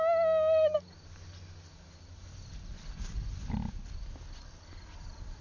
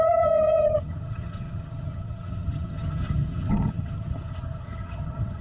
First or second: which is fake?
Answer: second